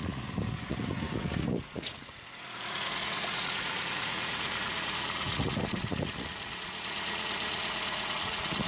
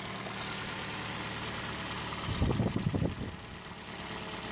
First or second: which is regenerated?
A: first